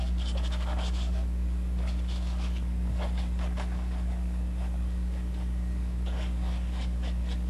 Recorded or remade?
remade